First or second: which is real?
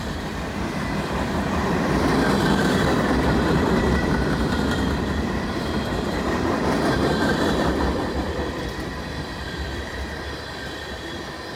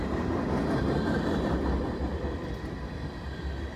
second